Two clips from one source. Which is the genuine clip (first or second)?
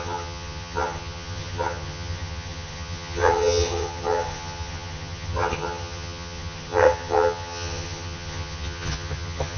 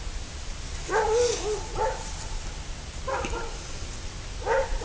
second